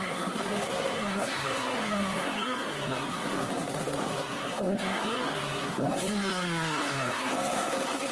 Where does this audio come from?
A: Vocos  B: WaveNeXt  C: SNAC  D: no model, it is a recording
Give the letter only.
C